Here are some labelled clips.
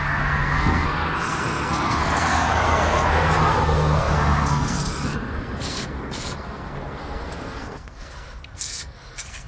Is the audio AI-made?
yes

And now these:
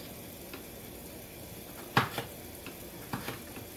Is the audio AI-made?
no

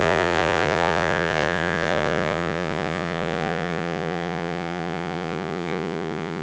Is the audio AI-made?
yes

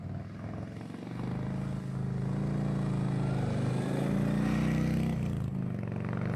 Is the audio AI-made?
no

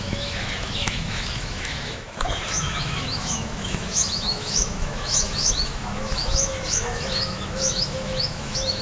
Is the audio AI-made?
yes